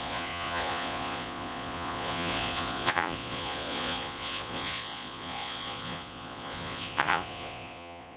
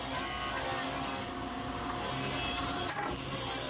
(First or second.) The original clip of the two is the second